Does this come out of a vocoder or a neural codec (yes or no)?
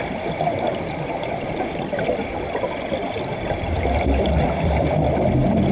yes